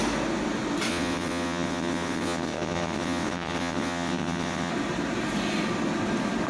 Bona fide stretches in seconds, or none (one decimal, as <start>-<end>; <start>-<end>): 0.0-0.9; 4.7-6.5